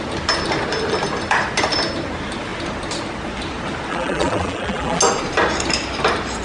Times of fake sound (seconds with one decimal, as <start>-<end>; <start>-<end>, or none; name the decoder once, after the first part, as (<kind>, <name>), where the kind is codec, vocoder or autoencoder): 3.9-5.0 (vocoder, BigVGAN v2)